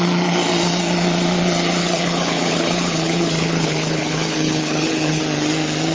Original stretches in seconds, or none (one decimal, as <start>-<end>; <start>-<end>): 0.0-1.8; 5.2-5.9